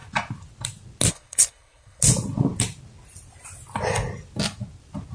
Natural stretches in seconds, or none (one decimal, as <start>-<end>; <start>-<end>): 0.0-1.1; 2.0-5.1